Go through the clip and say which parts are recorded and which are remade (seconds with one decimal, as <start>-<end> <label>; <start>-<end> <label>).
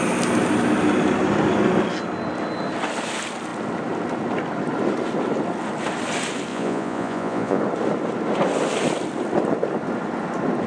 0.0-6.5 recorded; 6.5-7.6 remade; 7.6-10.7 recorded